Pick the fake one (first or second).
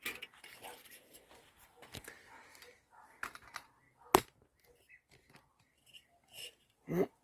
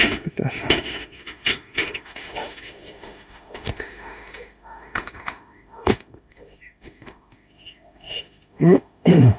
second